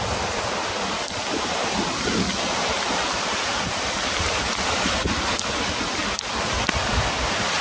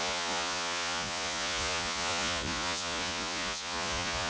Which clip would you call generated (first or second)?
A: second